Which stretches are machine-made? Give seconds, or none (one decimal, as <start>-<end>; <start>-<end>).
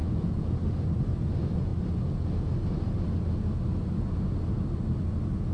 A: 0.0-0.6